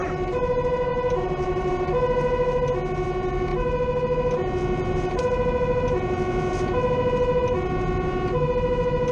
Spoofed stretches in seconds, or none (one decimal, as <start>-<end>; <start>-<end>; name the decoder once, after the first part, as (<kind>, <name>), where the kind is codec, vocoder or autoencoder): 0.9-1.7 (vocoder, BigVGAN v2)